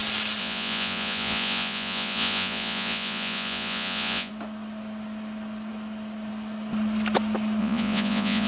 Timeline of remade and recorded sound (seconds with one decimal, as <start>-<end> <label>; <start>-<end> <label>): 0.0-0.4 recorded; 0.4-4.3 remade; 4.3-7.6 recorded; 7.6-8.5 remade